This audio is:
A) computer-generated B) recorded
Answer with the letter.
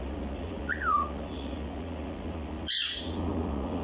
A